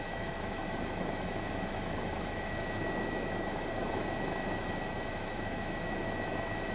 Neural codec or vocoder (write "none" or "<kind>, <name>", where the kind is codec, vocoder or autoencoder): autoencoder, DAC-VAE